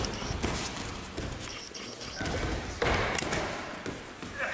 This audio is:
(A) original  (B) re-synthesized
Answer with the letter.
A